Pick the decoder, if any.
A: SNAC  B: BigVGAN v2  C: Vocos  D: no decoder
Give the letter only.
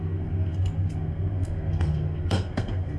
A